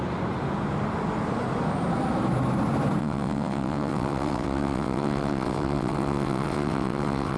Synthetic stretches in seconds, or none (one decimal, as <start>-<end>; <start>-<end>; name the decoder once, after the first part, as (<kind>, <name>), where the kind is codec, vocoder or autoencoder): 3.0-7.4 (vocoder, WaveNeXt)